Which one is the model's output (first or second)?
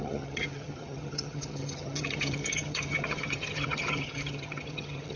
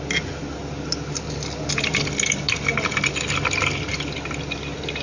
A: first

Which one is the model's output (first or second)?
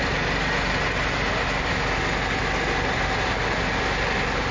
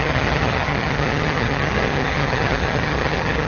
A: second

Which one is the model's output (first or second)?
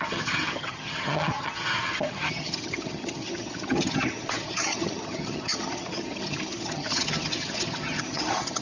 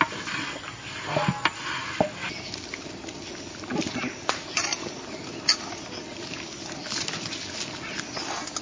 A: first